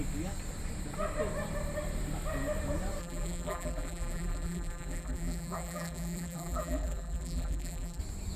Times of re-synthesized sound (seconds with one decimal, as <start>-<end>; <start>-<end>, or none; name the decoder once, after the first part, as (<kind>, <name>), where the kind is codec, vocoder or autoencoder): 3.0-8.0 (vocoder, BigVGAN v2)